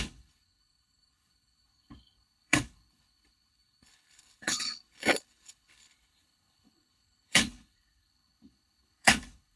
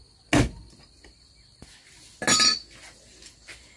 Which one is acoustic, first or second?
second